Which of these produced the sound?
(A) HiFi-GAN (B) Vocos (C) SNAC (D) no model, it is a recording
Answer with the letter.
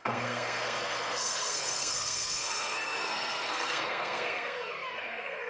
C